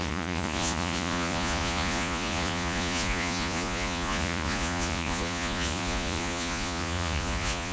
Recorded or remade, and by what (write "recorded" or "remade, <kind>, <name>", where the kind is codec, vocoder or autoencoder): remade, vocoder, Vocos